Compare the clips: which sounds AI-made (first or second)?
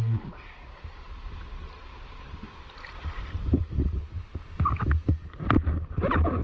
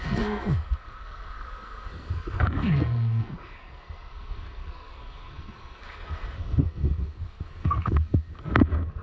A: second